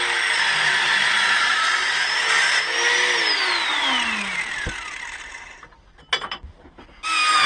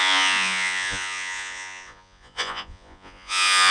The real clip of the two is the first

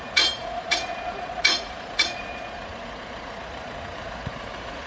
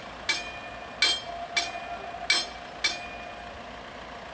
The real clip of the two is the second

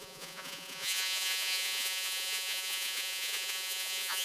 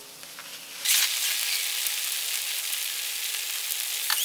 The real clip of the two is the second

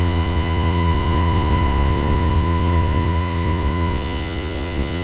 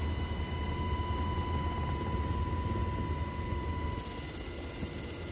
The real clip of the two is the second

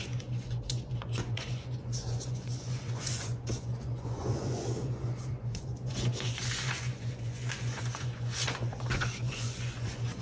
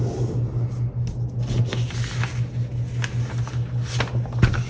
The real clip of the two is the second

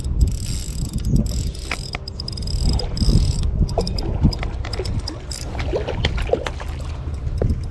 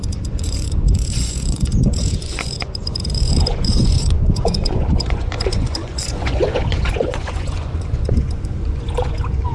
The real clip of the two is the first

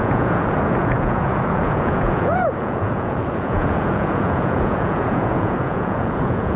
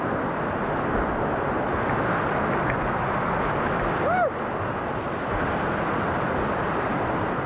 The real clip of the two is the second